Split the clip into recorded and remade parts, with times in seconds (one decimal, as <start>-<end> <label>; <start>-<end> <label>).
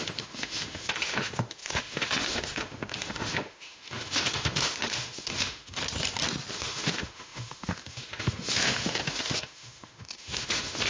0.0-5.8 remade; 5.8-6.5 recorded; 6.5-10.9 remade